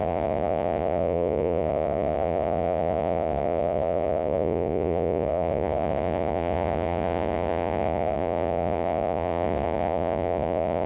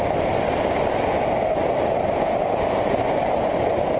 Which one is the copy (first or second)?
first